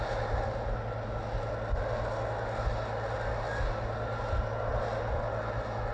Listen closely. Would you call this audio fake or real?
real